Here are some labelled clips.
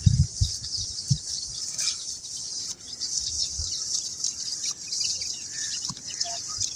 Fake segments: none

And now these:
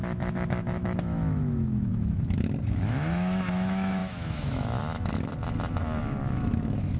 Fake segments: 0.0-5.3 (autoencoder, DAC-VAE); 6.0-7.0

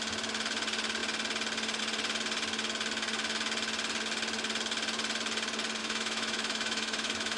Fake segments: 5.8-7.4 (autoencoder, DAC-VAE)

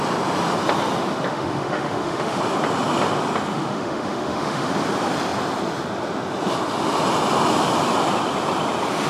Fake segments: 1.3-2.4 (autoencoder, DAC-VAE); 3.5-4.7

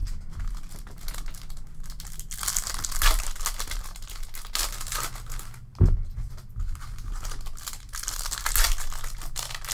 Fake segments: none

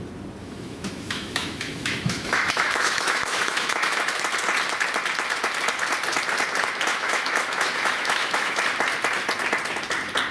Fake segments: 0.4-4.0 (autoencoder, DAC-VAE); 6.9-8.6